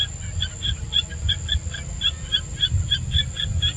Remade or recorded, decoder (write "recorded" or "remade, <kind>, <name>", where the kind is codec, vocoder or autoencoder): recorded